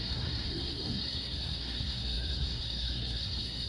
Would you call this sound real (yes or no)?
no